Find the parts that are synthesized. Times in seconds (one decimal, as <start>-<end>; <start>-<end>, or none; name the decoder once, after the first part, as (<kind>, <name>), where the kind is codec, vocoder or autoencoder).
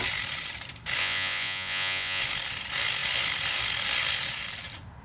1.0-2.2 (vocoder, Vocos)